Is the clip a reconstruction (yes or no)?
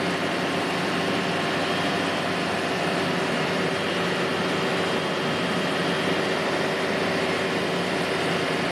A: no